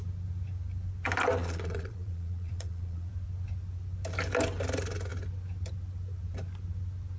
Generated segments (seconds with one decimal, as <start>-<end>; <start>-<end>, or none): 1.4-3.1